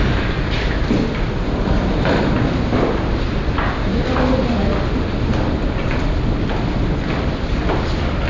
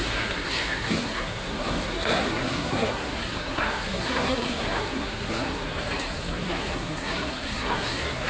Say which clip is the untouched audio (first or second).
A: first